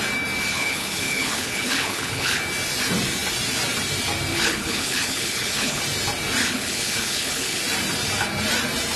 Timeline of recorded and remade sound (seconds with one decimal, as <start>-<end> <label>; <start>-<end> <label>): 0.0-0.5 recorded; 0.5-2.4 remade; 2.4-4.3 recorded; 4.3-5.8 remade; 5.8-6.4 recorded; 6.4-7.6 remade; 7.6-9.0 recorded